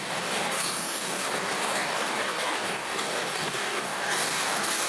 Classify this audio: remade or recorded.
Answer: remade